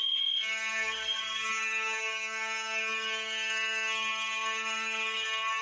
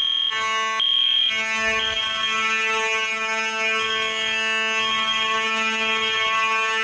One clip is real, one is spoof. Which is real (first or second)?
second